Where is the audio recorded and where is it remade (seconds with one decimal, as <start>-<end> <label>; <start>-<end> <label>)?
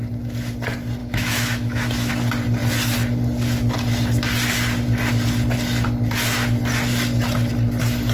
0.0-1.0 recorded; 1.0-2.1 remade; 2.1-8.1 recorded